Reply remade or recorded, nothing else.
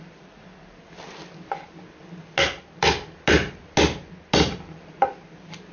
recorded